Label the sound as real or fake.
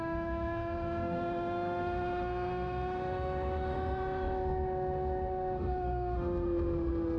fake